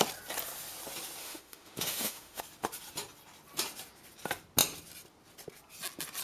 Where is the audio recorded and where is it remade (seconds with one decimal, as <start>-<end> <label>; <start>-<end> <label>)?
0.0-1.2 recorded; 1.2-2.4 remade; 2.4-6.2 recorded